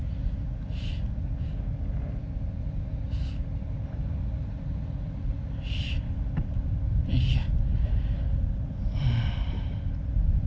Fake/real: real